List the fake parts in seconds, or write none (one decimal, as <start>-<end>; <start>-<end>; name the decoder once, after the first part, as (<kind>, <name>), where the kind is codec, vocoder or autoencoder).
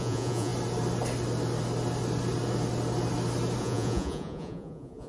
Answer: 0.0-0.5 (vocoder, Vocos); 3.6-5.1